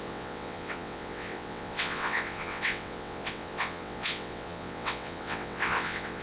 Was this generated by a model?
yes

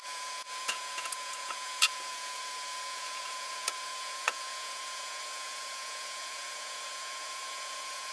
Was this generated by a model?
yes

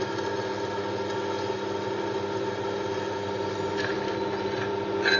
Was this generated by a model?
no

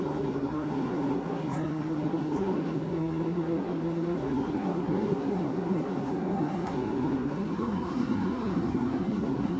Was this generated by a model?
yes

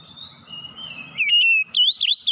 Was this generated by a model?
no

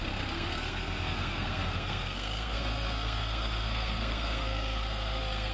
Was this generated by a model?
yes